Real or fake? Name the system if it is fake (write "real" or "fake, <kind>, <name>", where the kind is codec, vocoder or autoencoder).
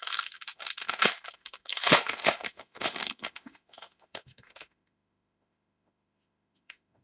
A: fake, autoencoder, DAC-VAE